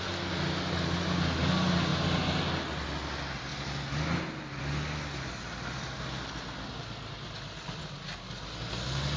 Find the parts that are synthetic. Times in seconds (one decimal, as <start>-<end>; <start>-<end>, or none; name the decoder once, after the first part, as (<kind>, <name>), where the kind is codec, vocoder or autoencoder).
none